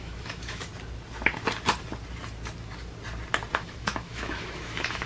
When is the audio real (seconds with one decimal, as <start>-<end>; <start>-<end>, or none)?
0.7-3.5